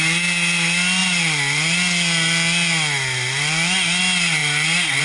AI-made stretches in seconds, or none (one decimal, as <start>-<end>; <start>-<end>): none